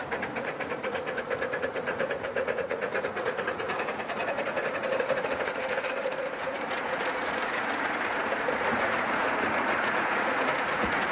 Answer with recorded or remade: remade